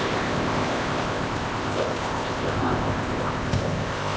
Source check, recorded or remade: remade